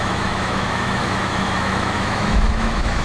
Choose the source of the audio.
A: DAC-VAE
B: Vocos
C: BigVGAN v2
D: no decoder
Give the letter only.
A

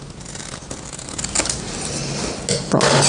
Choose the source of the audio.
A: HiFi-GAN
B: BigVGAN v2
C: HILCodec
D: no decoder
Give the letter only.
D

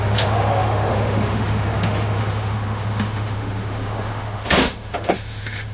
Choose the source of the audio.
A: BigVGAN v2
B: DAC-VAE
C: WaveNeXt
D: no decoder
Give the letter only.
B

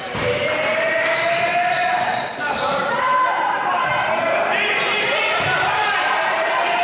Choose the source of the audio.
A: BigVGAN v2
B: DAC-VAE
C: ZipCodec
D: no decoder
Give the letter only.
A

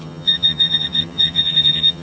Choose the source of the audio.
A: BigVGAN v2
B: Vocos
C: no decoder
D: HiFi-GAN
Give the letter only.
D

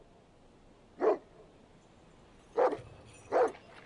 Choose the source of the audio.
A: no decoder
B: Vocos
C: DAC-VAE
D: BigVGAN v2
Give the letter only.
A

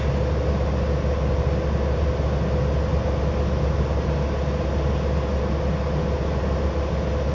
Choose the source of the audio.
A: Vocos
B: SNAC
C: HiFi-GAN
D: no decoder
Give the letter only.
D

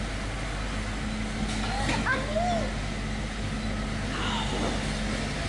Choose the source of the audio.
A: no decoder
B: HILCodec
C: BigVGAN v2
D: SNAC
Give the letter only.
A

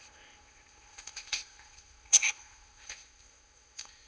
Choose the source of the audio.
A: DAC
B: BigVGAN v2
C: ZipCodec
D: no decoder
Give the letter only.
C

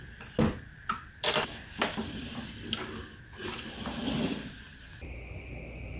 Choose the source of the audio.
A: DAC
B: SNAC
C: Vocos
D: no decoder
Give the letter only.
D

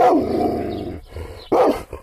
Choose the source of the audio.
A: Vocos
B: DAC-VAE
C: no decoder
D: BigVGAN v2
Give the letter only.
C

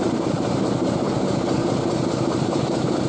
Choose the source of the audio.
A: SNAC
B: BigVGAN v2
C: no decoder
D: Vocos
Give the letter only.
B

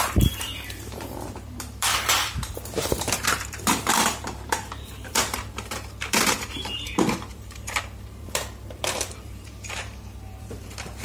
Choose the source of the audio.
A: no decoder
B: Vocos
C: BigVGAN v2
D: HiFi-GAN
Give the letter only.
C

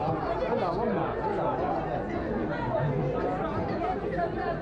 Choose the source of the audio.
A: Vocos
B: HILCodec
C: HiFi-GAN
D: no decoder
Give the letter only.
D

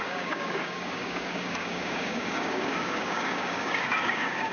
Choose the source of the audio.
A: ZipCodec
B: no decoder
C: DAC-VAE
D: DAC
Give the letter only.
D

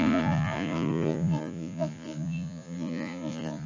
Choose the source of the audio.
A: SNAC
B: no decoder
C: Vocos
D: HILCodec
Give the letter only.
C